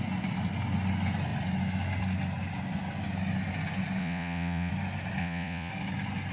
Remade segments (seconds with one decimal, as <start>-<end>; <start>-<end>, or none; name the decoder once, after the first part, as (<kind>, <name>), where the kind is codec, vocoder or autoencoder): 4.0-4.7 (vocoder, Vocos); 5.2-5.7